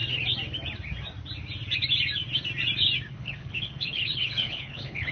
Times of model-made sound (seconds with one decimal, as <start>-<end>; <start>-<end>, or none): 3.1-5.1